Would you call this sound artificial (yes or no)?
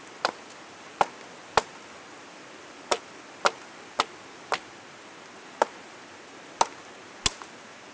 no